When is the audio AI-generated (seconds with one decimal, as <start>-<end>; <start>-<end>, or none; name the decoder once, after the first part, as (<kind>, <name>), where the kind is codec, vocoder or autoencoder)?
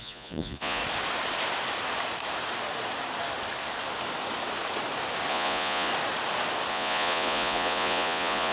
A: 0.0-0.8 (vocoder, Vocos); 5.3-5.9; 6.7-8.5